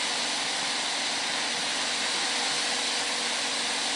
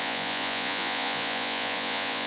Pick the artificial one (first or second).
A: second